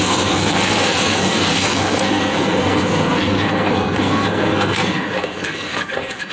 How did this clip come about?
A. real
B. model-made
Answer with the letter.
B